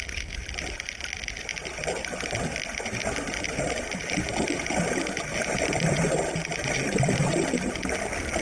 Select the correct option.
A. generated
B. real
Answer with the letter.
B